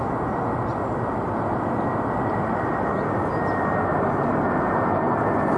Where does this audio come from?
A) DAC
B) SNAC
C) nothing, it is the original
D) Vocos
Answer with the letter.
C